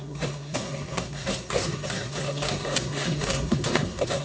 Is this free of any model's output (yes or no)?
no